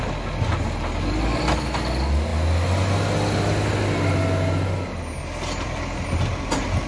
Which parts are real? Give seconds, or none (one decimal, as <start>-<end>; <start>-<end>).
0.0-6.9

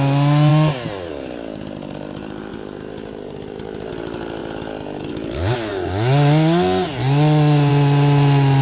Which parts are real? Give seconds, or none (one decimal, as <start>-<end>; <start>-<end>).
0.0-2.5; 3.9-8.6

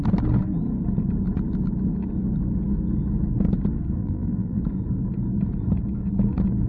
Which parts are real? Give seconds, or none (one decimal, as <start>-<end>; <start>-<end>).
0.0-4.0; 4.6-6.7

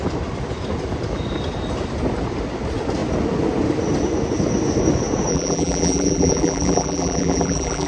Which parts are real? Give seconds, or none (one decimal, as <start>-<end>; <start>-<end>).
0.0-5.3